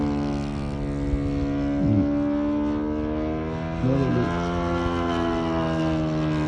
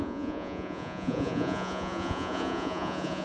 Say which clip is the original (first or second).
first